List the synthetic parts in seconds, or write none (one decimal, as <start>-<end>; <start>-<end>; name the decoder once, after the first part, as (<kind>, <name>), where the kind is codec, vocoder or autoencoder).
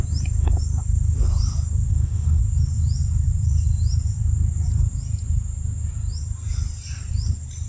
1.9-2.4 (autoencoder, DAC-VAE)